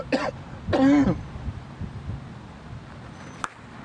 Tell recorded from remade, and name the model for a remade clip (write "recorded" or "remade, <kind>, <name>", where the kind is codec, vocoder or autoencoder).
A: recorded